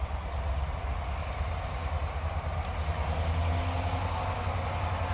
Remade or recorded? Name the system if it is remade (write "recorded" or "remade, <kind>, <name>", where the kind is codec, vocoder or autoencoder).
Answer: recorded